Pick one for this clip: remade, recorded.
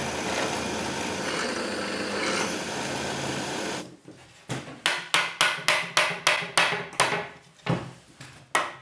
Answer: recorded